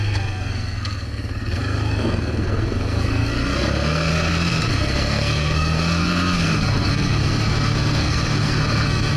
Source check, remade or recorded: remade